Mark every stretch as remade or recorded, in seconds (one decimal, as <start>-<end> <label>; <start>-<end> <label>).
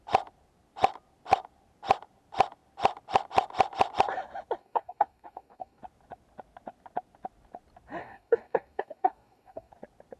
0.0-4.6 recorded; 4.6-5.8 remade; 5.8-8.0 recorded; 8.0-9.7 remade; 9.7-10.2 recorded